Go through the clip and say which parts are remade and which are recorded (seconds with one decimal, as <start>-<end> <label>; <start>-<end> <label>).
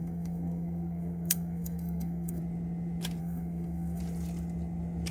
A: 0.0-2.4 remade; 2.4-3.2 recorded; 3.2-4.0 remade; 4.0-5.1 recorded